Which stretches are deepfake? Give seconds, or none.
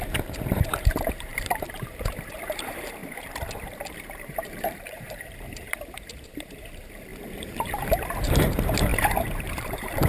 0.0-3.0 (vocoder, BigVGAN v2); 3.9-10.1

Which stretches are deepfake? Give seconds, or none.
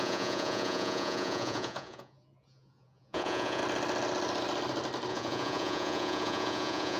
0.0-3.6 (vocoder, Vocos); 5.1-7.0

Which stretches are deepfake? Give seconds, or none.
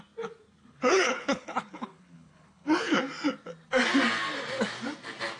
0.6-3.0 (codec, HILCodec)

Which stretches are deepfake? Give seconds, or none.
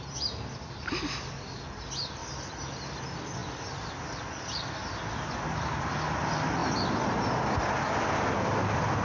none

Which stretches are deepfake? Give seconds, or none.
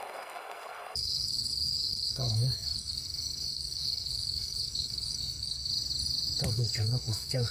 0.0-5.7 (codec, SNAC); 6.5-7.5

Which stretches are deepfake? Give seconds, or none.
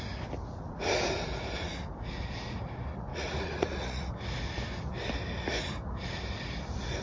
3.1-4.1 (vocoder, Vocos)